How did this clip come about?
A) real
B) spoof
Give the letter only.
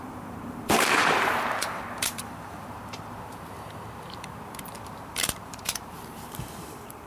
B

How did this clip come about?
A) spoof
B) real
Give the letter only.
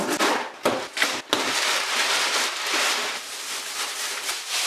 B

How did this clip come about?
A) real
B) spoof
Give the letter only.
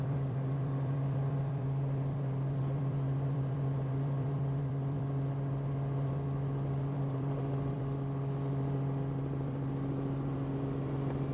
B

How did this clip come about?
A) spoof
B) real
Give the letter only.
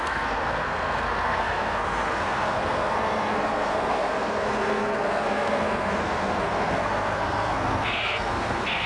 A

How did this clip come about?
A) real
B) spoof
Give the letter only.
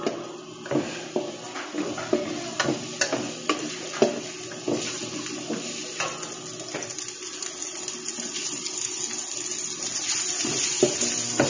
A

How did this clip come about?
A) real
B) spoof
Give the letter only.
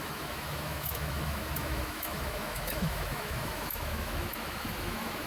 B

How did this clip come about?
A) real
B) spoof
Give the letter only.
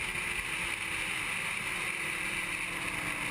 A